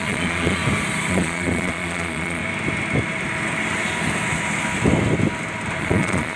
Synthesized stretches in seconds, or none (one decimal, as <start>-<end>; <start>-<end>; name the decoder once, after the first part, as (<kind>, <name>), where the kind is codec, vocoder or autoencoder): 0.0-0.6 (vocoder, Vocos); 1.1-2.4; 5.8-6.4